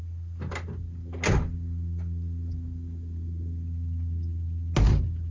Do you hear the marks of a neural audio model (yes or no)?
no